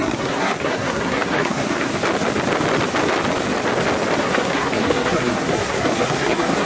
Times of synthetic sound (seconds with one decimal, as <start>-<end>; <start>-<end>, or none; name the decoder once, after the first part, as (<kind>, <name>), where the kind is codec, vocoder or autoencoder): 0.0-1.9 (codec, SNAC); 4.2-6.6